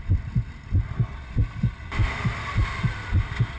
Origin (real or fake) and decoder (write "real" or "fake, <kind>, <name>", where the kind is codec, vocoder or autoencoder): real